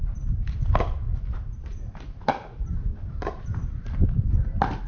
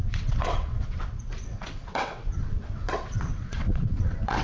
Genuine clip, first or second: first